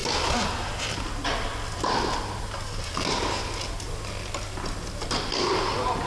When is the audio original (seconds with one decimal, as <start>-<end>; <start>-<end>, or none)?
0.0-6.1